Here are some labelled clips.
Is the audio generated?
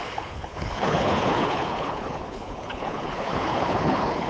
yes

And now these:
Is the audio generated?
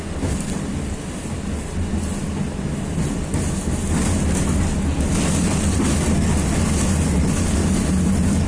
no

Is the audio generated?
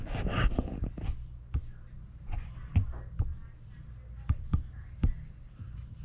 no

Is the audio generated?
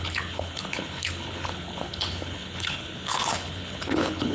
yes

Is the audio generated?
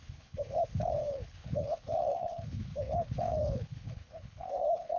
yes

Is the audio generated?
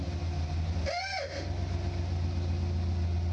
no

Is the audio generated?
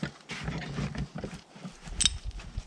no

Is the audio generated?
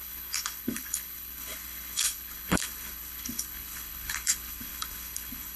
yes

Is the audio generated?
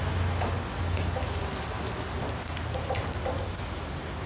no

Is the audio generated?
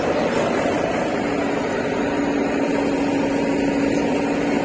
no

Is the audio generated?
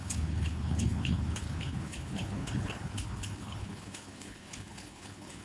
yes